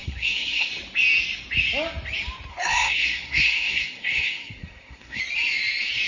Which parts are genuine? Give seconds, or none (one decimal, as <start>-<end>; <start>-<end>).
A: 0.7-2.5; 5.2-6.1